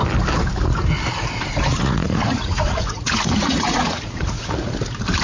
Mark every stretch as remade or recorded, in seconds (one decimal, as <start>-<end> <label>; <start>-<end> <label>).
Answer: 0.0-1.7 recorded; 1.7-4.8 remade; 4.8-5.2 recorded